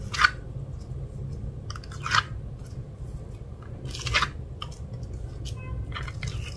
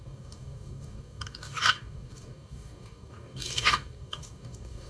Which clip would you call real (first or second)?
first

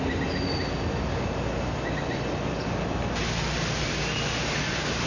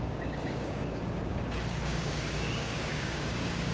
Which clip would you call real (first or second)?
first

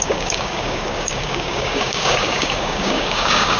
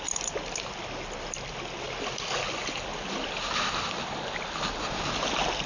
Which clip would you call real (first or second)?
second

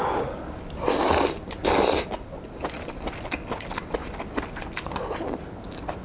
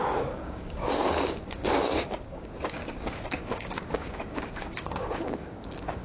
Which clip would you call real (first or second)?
first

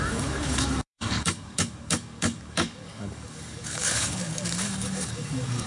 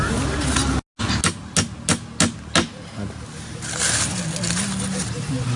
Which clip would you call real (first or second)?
second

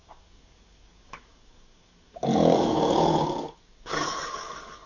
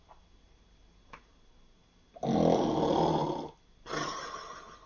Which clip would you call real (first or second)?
second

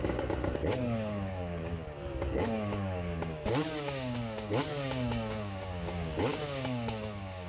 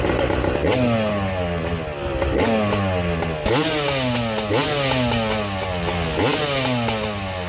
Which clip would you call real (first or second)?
second